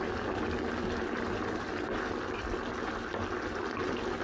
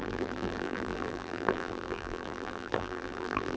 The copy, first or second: second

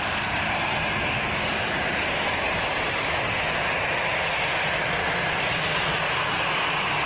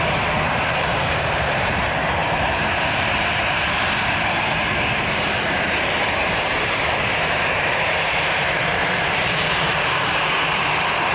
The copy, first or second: second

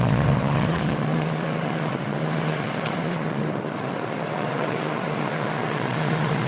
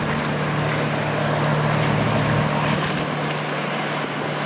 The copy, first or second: first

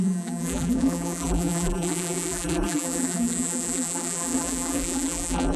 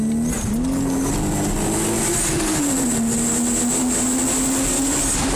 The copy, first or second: first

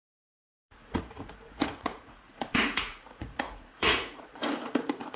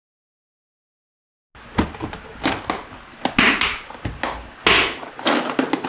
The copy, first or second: first